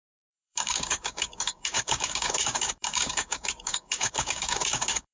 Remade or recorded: remade